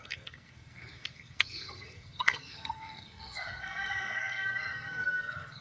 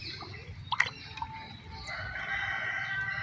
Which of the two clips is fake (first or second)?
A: first